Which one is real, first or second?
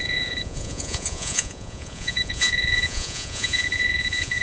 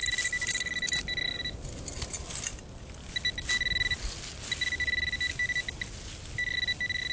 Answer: second